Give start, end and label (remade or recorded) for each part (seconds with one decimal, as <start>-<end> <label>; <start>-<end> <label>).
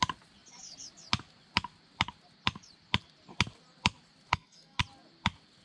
0.0-4.3 recorded; 4.3-4.8 remade; 4.8-5.6 recorded